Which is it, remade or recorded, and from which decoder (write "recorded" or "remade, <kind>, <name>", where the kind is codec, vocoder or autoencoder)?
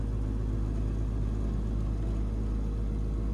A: recorded